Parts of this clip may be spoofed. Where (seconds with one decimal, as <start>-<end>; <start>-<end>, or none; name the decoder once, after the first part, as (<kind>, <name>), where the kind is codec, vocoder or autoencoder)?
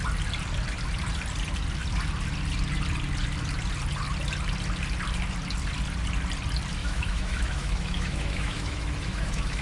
6.8-9.6 (autoencoder, DAC-VAE)